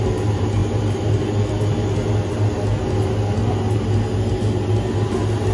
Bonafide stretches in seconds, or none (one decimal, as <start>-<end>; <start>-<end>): 0.0-5.5